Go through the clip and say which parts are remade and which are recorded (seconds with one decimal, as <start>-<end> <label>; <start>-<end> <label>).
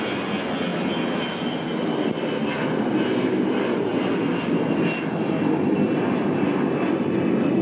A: 0.0-7.6 recorded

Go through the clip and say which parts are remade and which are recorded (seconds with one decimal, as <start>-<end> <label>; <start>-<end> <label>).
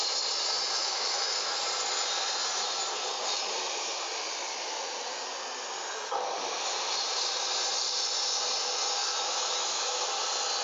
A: 0.0-0.8 recorded; 0.8-1.3 remade; 1.3-9.0 recorded; 9.0-10.0 remade; 10.0-10.6 recorded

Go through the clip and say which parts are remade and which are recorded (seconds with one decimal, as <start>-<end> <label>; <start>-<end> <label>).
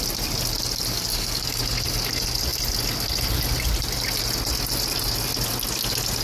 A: 0.0-1.1 recorded; 1.1-1.6 remade; 1.6-6.2 recorded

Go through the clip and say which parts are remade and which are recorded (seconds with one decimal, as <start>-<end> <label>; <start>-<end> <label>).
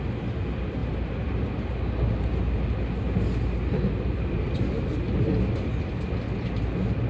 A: 0.0-7.1 recorded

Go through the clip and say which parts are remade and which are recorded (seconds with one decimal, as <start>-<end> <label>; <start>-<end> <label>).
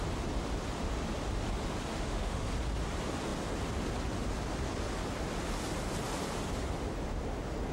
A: 0.0-1.9 recorded; 1.9-2.5 remade; 2.5-7.7 recorded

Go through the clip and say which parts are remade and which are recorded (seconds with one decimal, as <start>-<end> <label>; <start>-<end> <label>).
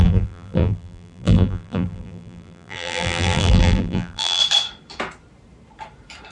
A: 0.0-4.4 remade; 4.4-6.3 recorded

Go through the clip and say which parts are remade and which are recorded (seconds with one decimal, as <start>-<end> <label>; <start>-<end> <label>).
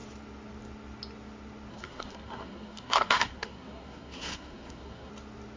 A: 0.0-1.7 recorded; 1.7-5.1 remade; 5.1-5.6 recorded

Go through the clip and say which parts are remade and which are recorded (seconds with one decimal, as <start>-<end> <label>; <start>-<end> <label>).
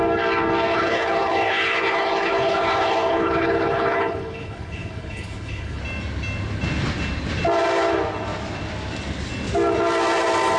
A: 0.0-0.7 recorded; 0.7-5.8 remade; 5.8-10.6 recorded